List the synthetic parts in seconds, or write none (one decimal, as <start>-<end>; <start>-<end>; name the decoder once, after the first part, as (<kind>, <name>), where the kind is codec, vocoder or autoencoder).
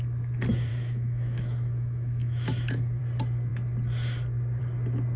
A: 0.7-3.0 (autoencoder, DAC-VAE)